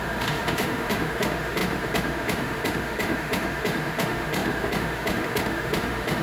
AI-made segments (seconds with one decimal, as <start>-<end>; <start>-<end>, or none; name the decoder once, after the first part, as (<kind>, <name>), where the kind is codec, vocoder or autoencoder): 0.0-6.2 (autoencoder, DAC-VAE)